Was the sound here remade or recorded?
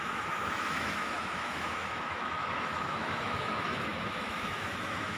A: remade